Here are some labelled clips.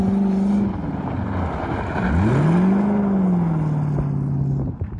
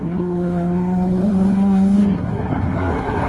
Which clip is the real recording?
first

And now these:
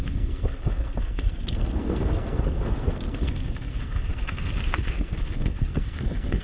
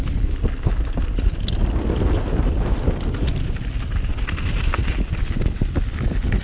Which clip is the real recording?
second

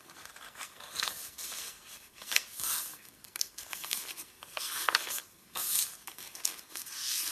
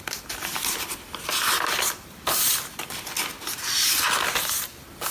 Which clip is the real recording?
second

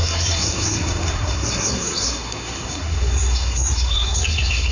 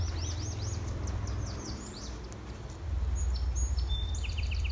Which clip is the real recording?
second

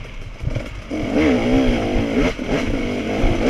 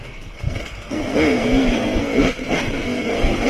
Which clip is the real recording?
first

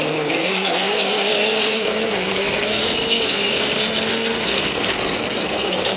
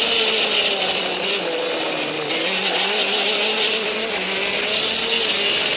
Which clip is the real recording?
second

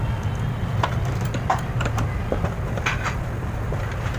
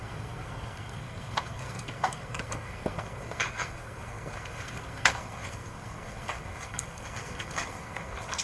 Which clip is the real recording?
first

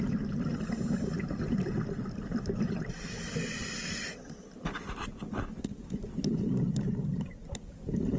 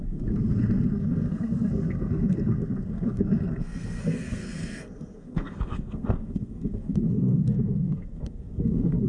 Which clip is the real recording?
first